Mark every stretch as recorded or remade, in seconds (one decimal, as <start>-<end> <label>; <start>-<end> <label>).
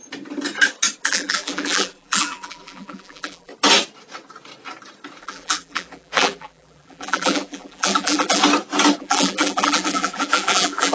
0.0-1.0 recorded; 1.0-3.5 remade; 3.5-5.2 recorded; 5.2-8.4 remade; 8.4-9.0 recorded; 9.0-10.9 remade